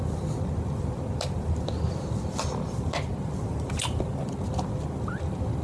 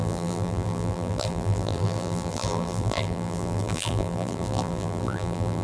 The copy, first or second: second